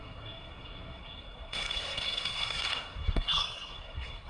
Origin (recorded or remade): remade